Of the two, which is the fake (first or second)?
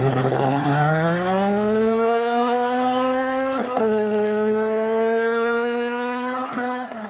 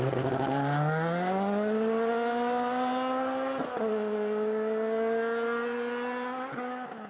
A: first